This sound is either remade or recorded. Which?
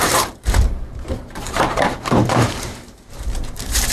remade